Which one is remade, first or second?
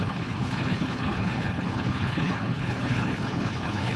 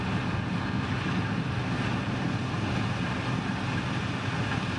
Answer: first